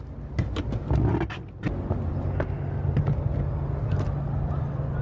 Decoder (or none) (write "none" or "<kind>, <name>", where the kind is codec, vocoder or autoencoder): none